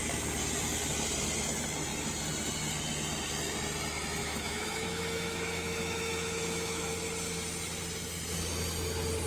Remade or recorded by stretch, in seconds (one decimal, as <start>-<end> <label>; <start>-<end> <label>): 0.0-4.2 recorded; 4.2-6.9 remade; 6.9-9.3 recorded

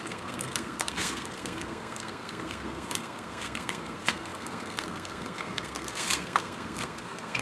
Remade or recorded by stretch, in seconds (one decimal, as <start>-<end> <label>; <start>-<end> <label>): 0.0-7.4 remade